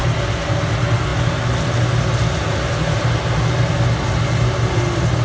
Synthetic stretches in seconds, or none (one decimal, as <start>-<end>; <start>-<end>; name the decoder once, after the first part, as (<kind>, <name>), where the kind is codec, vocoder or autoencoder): none

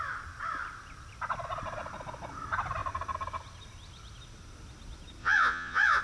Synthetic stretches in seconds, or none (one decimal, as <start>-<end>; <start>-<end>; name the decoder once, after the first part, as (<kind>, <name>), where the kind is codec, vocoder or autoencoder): 5.2-6.0 (vocoder, Vocos)

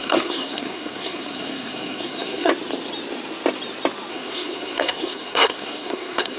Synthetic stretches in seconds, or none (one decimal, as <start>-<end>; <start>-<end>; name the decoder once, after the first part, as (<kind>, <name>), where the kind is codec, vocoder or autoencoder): 0.0-2.5 (codec, SNAC); 4.1-6.4

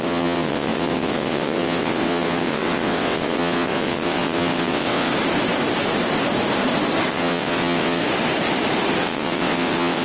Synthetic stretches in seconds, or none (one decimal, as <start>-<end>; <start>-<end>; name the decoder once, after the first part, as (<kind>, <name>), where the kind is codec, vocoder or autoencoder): 0.0-5.1 (vocoder, WaveNeXt); 7.1-8.0; 9.0-10.0

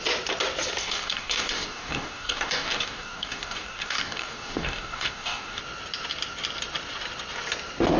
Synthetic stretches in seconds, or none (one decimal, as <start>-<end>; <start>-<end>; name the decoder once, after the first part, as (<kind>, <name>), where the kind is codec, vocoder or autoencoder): 0.8-5.6 (codec, DAC)